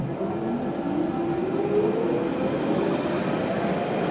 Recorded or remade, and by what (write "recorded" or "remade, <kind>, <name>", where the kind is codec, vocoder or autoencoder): recorded